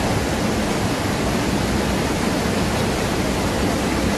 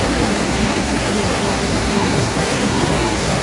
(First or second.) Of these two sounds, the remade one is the second